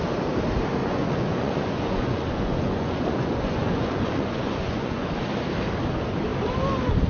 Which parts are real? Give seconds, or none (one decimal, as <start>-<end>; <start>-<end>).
0.0-0.8; 5.1-7.1